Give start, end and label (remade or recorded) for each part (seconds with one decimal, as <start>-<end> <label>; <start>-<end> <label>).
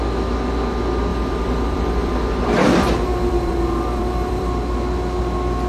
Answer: 0.0-1.1 recorded; 1.1-4.5 remade; 4.5-5.7 recorded